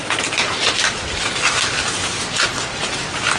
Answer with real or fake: real